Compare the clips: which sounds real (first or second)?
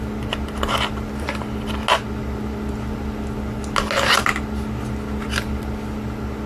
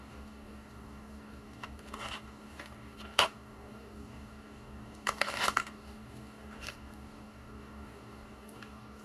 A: first